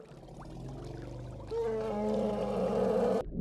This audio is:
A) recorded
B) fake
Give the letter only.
A